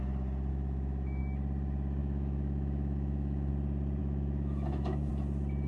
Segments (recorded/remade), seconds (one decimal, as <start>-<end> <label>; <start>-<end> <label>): 0.0-0.5 recorded; 0.5-1.2 remade; 1.2-2.0 recorded; 2.0-3.5 remade; 3.5-4.0 recorded; 4.0-5.1 remade; 5.1-5.7 recorded